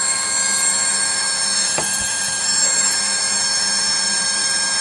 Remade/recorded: remade